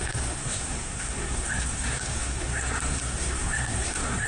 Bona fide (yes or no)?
no